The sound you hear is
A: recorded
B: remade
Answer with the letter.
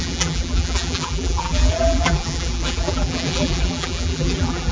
B